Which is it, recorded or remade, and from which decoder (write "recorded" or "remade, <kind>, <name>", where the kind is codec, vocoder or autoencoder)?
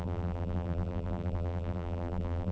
remade, vocoder, BigVGAN v2